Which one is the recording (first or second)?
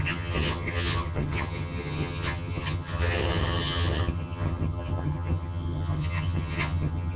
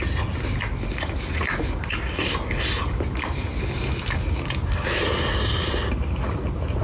second